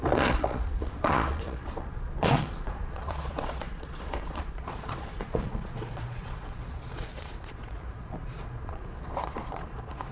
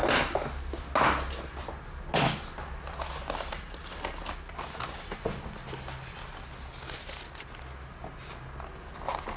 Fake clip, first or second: first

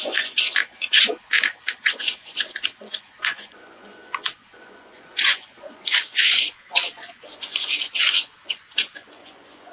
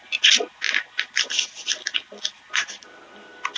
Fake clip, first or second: first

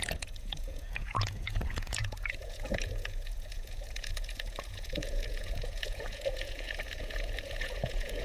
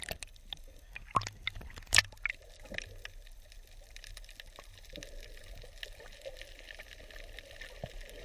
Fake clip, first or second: first